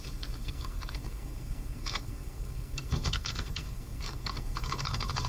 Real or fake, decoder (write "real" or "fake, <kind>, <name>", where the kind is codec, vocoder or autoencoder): fake, codec, SNAC